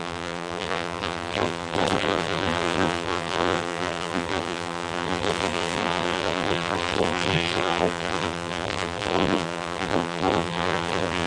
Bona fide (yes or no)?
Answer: no